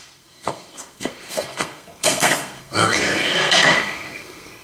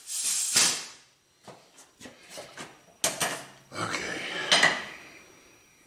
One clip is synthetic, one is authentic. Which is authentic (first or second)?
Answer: second